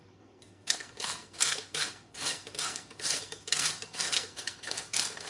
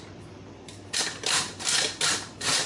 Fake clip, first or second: first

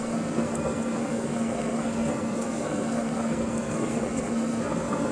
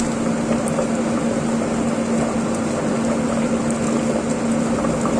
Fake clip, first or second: first